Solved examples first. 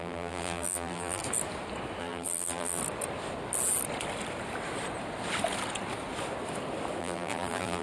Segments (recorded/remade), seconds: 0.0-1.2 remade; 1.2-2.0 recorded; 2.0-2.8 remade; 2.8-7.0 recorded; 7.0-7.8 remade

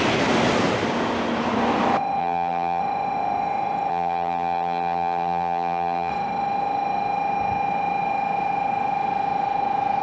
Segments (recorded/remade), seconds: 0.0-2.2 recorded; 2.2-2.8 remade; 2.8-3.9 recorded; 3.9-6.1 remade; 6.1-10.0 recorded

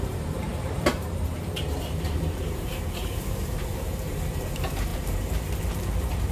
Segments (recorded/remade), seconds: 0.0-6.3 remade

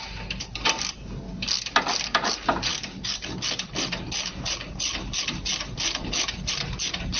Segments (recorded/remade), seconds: 0.0-7.2 recorded